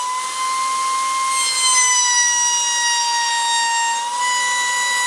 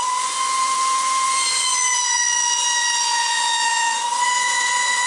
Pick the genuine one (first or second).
first